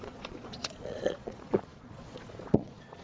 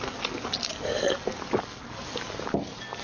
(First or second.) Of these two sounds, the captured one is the second